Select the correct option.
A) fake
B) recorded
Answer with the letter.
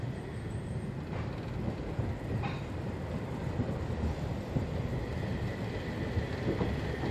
B